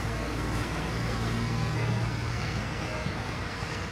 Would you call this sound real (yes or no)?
no